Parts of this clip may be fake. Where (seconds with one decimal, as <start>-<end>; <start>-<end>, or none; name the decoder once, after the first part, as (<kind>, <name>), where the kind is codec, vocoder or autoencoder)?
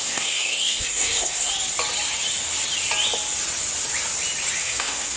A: 0.0-1.5 (codec, SNAC); 4.6-5.2